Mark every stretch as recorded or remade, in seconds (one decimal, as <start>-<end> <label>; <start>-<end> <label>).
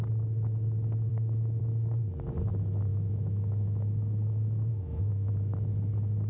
0.0-1.1 recorded; 1.1-1.6 remade; 1.6-2.9 recorded; 2.9-5.3 remade; 5.3-6.3 recorded